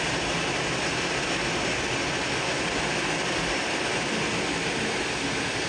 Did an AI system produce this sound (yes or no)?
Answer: no